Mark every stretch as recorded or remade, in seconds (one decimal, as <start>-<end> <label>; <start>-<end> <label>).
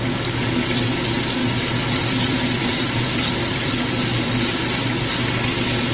0.0-1.4 recorded; 1.4-3.7 remade; 3.7-5.9 recorded